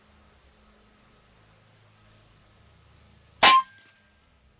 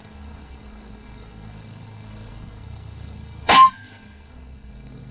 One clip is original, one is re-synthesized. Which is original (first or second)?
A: first